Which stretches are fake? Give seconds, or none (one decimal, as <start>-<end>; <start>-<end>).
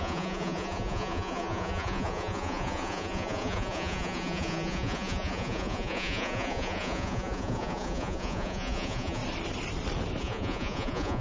0.0-9.2; 10.2-11.2